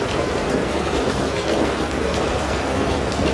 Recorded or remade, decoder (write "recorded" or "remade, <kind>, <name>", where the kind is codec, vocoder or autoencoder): remade, codec, SNAC